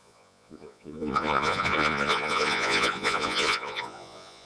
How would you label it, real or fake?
fake